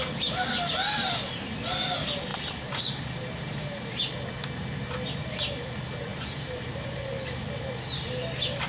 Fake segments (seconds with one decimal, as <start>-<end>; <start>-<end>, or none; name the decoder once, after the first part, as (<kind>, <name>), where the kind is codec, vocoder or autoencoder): 2.3-4.1 (vocoder, BigVGAN v2); 6.1-7.0